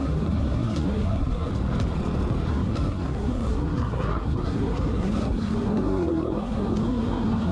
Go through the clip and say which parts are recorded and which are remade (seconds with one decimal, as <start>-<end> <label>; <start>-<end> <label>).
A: 0.0-1.5 remade; 1.5-2.5 recorded; 2.5-7.5 remade